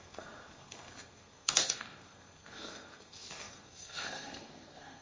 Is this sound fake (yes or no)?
yes